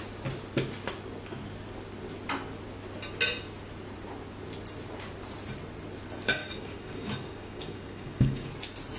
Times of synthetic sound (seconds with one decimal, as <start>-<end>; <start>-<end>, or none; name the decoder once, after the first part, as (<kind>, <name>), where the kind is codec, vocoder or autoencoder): 6.4-8.5 (codec, DAC)